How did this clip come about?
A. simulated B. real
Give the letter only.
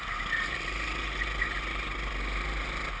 B